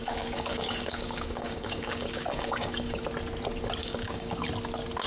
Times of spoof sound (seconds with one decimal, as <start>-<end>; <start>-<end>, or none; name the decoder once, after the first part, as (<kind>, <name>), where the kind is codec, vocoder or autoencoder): 0.0-3.0 (codec, DAC); 3.8-4.5